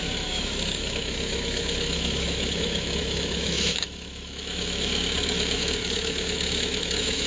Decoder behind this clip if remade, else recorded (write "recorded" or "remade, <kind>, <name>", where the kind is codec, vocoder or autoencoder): remade, autoencoder, DAC-VAE